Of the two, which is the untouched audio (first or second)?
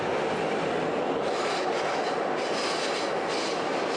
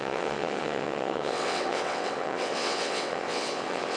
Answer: first